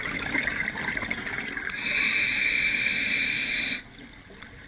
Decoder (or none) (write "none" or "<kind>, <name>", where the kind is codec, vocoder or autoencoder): none